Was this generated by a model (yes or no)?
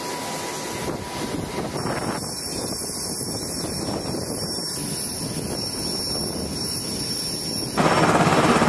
no